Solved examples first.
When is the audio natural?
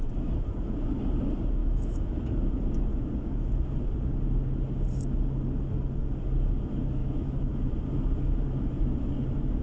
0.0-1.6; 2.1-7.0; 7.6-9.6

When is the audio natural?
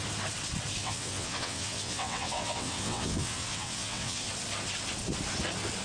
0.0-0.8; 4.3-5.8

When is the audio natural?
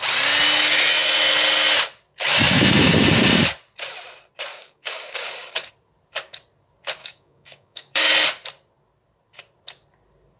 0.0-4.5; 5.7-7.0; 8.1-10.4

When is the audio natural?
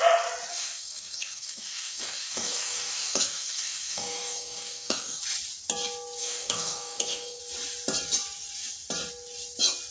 0.0-0.5; 5.2-6.2; 7.4-9.9